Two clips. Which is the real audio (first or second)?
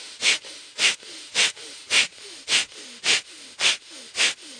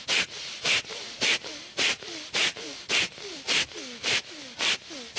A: second